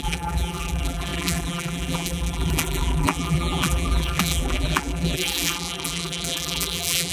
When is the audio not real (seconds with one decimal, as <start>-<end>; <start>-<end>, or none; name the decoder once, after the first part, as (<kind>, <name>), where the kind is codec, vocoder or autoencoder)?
0.0-7.1 (vocoder, BigVGAN v2)